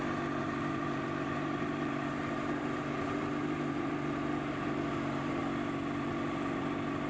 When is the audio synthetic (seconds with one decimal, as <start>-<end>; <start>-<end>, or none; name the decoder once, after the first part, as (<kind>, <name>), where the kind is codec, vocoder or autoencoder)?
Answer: 0.4-3.9 (vocoder, BigVGAN v2)